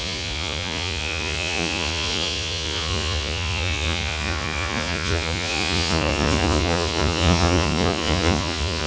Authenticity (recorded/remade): remade